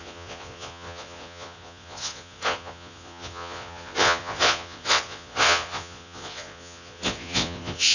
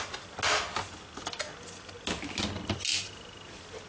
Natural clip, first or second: second